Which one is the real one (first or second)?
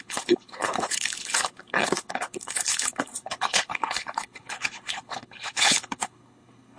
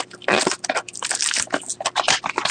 second